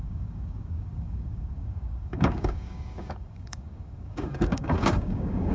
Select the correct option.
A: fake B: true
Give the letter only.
A